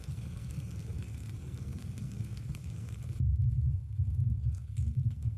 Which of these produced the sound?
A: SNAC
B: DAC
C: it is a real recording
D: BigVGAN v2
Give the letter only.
A